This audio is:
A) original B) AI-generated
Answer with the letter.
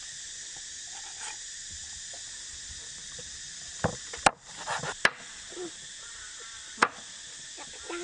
A